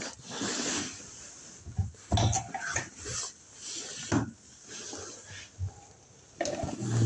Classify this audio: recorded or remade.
recorded